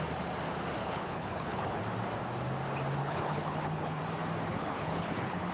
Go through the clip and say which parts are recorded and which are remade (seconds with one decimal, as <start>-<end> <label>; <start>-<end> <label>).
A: 0.0-0.8 recorded; 0.8-1.8 remade; 1.8-3.0 recorded; 3.0-4.0 remade; 4.0-4.5 recorded; 4.5-5.5 remade